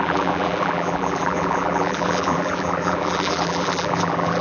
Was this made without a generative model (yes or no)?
no